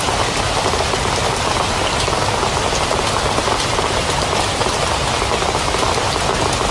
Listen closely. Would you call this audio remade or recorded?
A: recorded